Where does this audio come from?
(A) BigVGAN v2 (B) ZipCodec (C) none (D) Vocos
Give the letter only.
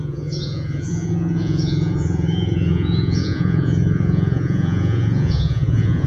D